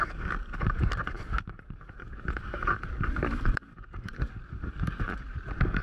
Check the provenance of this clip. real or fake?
fake